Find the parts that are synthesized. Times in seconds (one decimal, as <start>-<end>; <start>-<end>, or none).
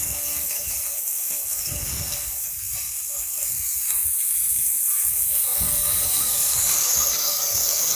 0.0-8.0